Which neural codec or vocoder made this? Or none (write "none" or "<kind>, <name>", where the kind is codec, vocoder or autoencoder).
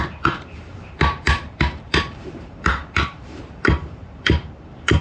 vocoder, BigVGAN v2